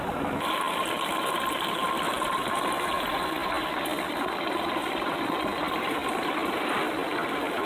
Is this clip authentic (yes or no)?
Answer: yes